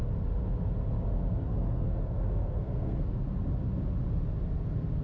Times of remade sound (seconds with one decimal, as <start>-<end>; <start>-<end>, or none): 1.4-3.1